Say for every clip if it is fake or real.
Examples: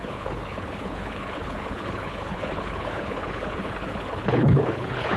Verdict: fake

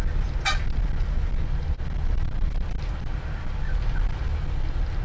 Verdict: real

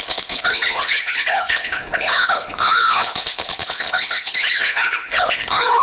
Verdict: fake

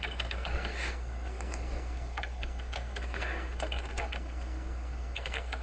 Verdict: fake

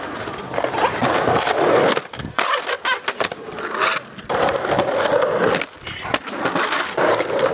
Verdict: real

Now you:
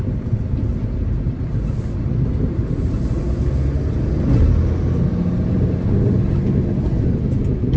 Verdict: real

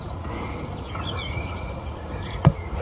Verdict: fake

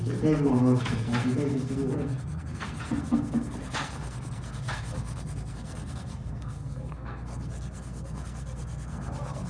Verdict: fake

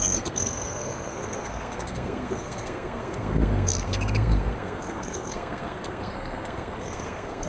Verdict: fake